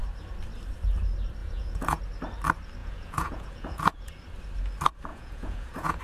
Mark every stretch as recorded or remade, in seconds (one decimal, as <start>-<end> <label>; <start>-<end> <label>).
0.0-1.4 recorded; 1.4-2.0 remade; 2.0-2.8 recorded; 2.8-4.1 remade; 4.1-5.1 recorded; 5.1-6.0 remade